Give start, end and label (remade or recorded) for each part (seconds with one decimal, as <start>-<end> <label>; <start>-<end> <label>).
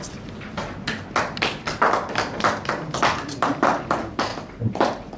0.0-0.6 remade; 0.6-3.7 recorded; 3.7-5.2 remade